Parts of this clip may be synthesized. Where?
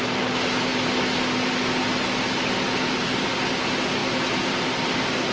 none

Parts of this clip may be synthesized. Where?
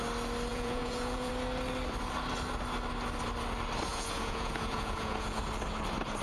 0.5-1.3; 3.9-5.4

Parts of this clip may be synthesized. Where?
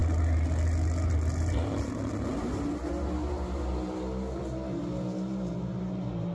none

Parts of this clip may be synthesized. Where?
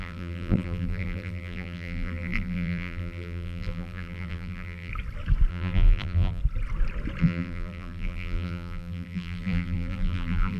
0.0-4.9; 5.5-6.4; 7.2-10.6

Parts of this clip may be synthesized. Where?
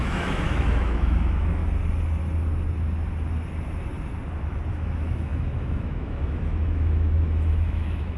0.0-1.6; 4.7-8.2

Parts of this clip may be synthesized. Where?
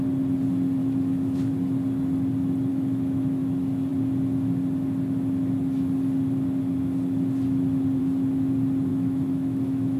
0.8-1.5; 2.7-3.4; 8.9-10.0